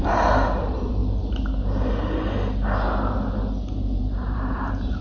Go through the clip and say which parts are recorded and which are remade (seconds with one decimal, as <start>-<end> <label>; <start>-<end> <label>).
0.0-1.0 remade; 1.0-4.0 recorded; 4.0-5.0 remade